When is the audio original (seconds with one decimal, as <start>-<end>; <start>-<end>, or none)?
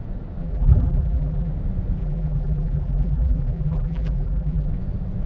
0.0-0.4; 1.5-2.0; 4.7-5.3